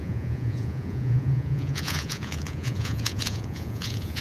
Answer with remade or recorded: remade